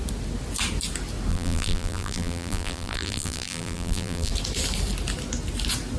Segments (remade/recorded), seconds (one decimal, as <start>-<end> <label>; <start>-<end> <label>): 0.0-1.3 recorded; 1.3-4.3 remade; 4.3-6.0 recorded